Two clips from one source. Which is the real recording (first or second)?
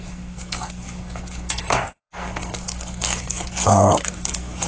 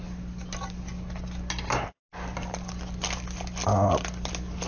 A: second